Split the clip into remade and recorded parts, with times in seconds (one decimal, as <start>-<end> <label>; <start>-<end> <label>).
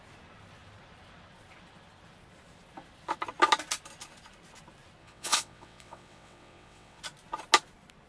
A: 0.0-5.0 recorded; 5.0-7.0 remade; 7.0-8.1 recorded